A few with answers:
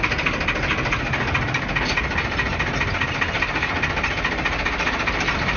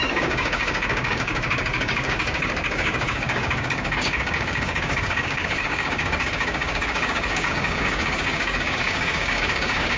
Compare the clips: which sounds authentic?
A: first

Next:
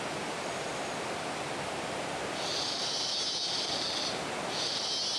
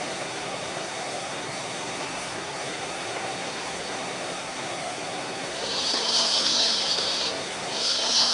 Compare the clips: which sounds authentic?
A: first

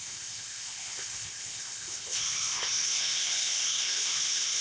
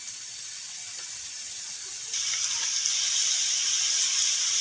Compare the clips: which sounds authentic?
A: second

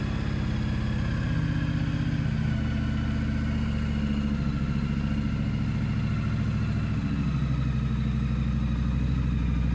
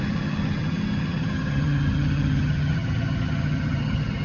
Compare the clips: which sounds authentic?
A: first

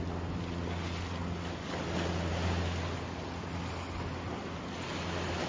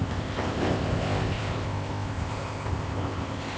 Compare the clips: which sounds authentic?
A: first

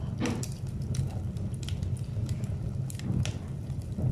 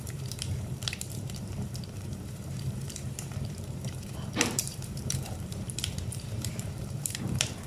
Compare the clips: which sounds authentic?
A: first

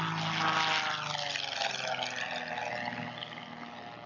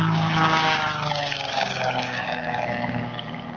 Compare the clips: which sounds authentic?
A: first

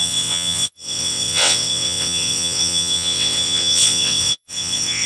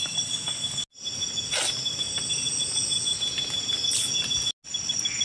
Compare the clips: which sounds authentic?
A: second